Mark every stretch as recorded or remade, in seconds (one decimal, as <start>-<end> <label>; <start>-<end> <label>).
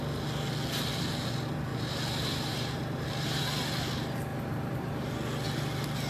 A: 0.0-1.7 recorded; 1.7-3.4 remade; 3.4-4.3 recorded; 4.3-5.1 remade; 5.1-6.1 recorded